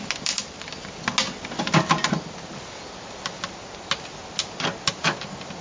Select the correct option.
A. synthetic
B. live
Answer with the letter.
B